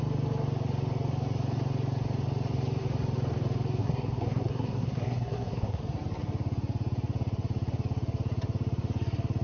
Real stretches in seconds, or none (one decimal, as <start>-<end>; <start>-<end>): 0.0-3.8; 5.8-9.4